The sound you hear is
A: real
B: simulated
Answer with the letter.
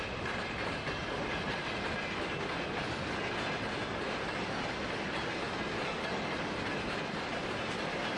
A